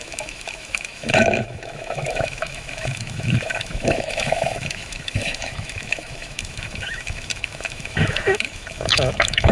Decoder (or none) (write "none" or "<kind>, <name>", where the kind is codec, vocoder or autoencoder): autoencoder, DAC-VAE